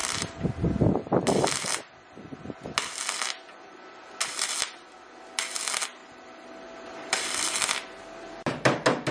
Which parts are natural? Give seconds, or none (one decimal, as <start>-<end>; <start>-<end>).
0.0-6.0; 7.7-9.1